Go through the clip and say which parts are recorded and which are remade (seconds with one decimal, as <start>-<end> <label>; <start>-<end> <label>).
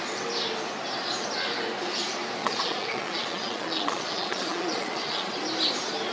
0.0-2.4 recorded; 2.4-5.3 remade; 5.3-6.1 recorded